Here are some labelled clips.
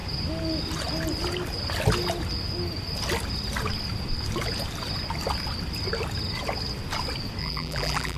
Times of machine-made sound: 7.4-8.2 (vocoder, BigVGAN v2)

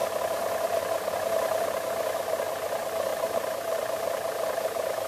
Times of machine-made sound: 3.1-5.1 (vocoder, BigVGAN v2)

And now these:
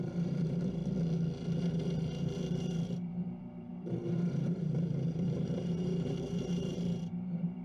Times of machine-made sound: 0.0-0.8 (vocoder, BigVGAN v2); 1.6-7.6

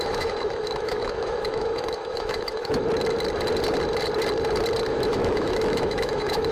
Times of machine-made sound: 0.0-2.8 (autoencoder, DAC-VAE); 4.9-6.5

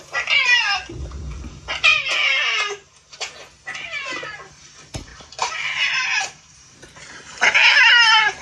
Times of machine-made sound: 1.9-3.3 (vocoder, BigVGAN v2); 5.1-7.4